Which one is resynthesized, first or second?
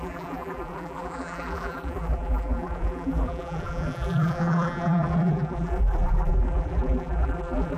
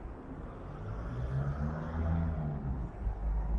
first